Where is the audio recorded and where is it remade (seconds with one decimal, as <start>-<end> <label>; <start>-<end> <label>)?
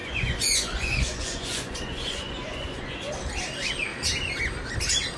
0.0-3.1 remade; 3.1-5.2 recorded